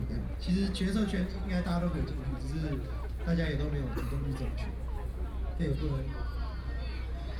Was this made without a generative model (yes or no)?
yes